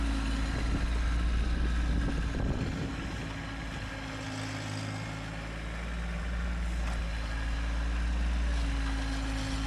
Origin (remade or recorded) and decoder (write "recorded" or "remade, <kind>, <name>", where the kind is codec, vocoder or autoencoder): recorded